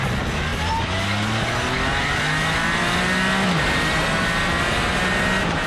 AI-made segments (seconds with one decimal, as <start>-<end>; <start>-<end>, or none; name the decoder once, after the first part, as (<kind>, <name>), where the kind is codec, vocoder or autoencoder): none